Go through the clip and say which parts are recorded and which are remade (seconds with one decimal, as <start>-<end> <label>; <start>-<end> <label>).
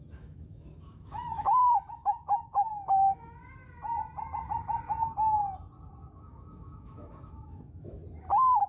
0.0-3.4 remade; 3.4-6.2 recorded; 6.2-8.0 remade; 8.0-8.7 recorded